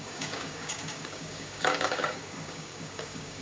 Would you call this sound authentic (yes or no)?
no